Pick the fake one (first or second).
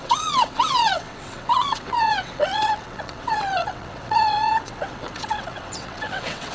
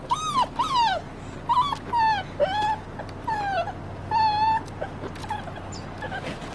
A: first